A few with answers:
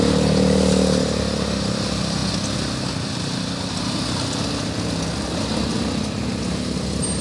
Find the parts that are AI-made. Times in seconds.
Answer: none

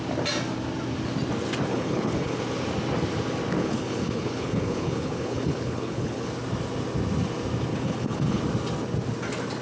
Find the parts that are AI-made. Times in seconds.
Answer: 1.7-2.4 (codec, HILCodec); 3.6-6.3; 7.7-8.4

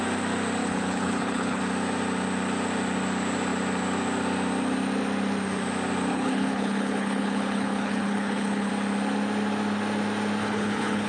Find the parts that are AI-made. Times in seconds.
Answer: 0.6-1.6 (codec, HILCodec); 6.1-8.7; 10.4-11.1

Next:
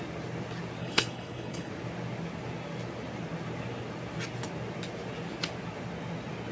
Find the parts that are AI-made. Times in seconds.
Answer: 0.8-1.7 (codec, HILCodec)

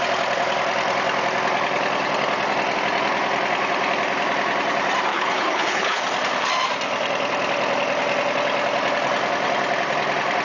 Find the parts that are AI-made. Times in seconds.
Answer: 5.1-6.0 (codec, HILCodec)